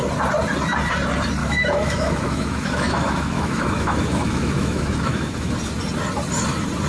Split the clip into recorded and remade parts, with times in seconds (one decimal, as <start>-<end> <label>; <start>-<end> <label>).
0.0-1.4 recorded; 1.4-5.5 remade; 5.5-6.9 recorded